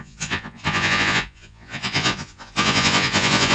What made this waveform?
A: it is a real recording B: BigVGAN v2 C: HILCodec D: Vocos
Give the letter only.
D